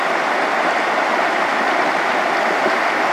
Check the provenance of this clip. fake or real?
real